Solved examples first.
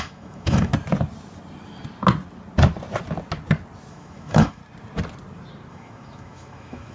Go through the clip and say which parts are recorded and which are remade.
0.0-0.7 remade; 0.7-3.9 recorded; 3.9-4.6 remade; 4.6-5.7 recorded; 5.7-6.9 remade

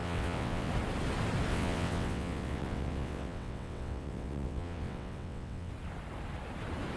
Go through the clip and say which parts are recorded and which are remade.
0.0-0.7 remade; 0.7-1.5 recorded; 1.5-5.7 remade; 5.7-7.0 recorded

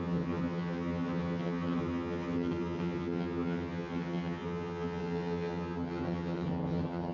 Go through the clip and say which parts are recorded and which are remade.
0.0-7.1 remade

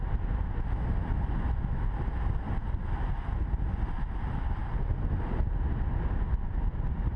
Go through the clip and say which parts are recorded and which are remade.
0.0-7.2 recorded

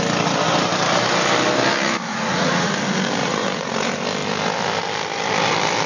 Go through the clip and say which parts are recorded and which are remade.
0.0-2.1 recorded; 2.1-2.7 remade; 2.7-3.2 recorded; 3.2-3.7 remade; 3.7-5.9 recorded

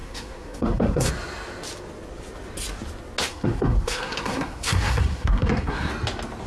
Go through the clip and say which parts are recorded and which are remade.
0.0-1.1 remade; 1.1-3.3 recorded; 3.3-5.9 remade; 5.9-6.5 recorded

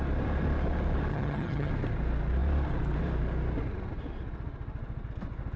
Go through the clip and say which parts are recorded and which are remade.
0.0-1.1 recorded; 1.1-1.7 remade; 1.7-5.6 recorded

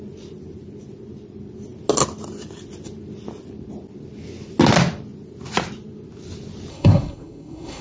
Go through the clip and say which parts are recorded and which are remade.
0.0-6.7 recorded; 6.7-7.8 remade